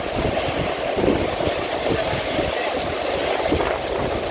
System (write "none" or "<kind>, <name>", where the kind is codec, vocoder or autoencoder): none